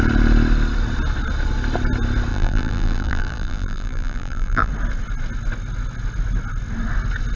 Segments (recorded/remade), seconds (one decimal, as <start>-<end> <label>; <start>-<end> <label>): 0.0-2.3 recorded; 2.3-4.7 remade; 4.7-7.4 recorded